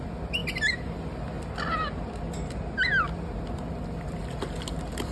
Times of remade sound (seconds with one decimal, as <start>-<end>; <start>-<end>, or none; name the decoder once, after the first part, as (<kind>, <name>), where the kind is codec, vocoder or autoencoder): none